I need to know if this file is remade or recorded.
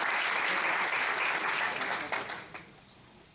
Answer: recorded